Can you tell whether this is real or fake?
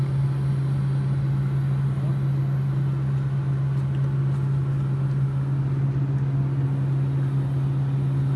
real